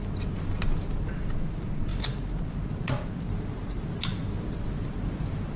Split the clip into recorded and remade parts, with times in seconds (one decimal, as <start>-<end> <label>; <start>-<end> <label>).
0.0-5.6 recorded